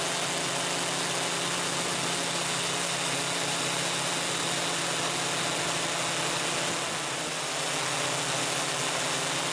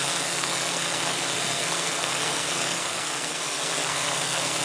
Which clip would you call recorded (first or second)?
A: first